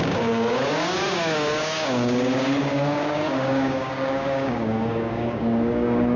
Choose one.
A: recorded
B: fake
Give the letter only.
B